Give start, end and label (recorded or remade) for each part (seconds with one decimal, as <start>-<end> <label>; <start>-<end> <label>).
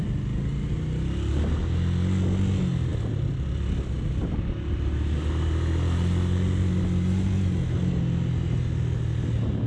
0.0-9.7 recorded